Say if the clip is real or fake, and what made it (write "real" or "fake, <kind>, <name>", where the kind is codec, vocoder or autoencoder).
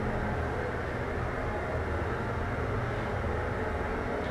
real